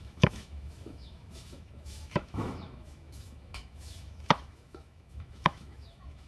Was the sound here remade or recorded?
remade